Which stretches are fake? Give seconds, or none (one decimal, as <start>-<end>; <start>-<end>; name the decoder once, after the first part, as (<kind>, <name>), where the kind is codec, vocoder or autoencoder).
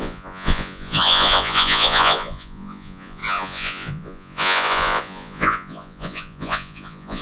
0.0-7.2 (vocoder, Vocos)